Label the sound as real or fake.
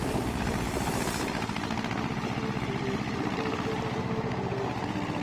real